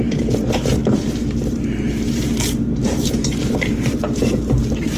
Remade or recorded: remade